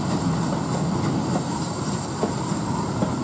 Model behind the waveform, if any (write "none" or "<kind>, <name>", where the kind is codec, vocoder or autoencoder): vocoder, BigVGAN v2